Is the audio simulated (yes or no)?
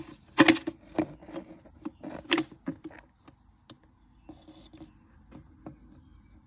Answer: no